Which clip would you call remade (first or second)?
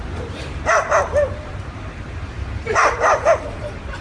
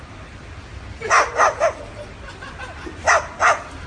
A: first